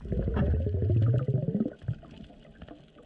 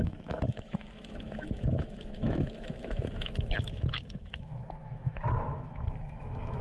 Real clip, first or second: first